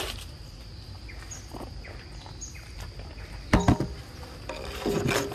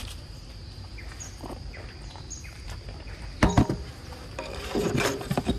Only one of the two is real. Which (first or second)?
first